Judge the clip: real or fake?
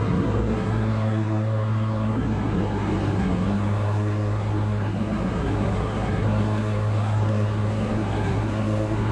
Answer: fake